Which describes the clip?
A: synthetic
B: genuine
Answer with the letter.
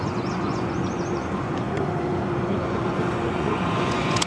A